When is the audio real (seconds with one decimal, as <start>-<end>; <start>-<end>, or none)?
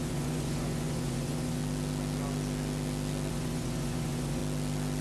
1.6-3.3; 4.4-5.0